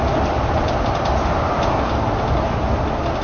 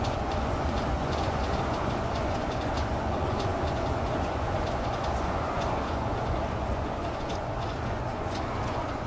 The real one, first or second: first